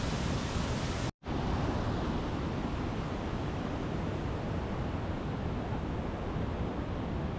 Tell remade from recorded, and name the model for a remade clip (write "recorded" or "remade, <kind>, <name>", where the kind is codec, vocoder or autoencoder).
recorded